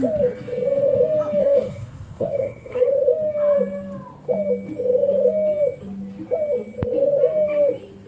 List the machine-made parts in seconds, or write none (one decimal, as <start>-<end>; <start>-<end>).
1.4-2.8